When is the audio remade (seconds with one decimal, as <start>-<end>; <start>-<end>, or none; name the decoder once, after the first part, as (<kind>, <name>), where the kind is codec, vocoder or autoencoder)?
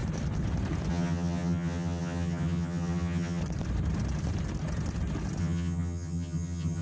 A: 0.9-3.4 (vocoder, HiFi-GAN); 5.4-6.8